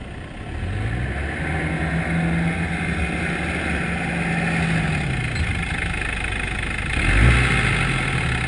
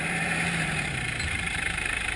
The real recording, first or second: first